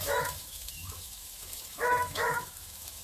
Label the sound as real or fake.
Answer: fake